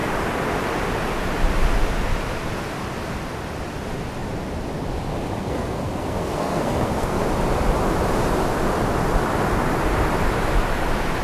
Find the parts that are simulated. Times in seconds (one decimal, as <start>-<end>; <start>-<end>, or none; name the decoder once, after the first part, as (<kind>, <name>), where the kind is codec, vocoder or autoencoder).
5.4-7.2 (codec, SNAC)